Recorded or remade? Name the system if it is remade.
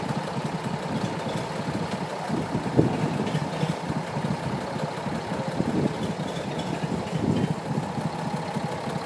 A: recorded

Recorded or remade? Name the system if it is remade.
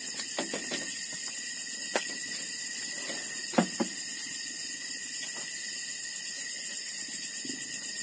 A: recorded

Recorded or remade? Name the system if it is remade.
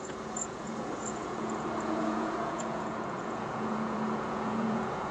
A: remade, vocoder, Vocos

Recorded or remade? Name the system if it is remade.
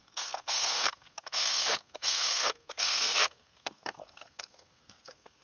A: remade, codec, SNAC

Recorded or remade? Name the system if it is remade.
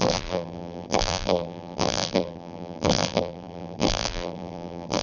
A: remade, vocoder, BigVGAN v2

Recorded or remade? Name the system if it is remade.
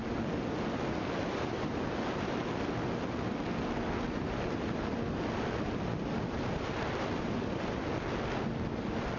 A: recorded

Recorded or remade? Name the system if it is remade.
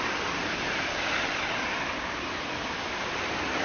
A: recorded